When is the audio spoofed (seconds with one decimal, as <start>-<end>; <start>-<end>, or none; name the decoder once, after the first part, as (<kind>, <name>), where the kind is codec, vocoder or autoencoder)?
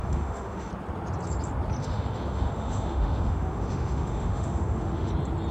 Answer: 0.0-0.7 (autoencoder, DAC-VAE); 1.8-5.1